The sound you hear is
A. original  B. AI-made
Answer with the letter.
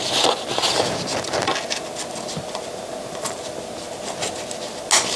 A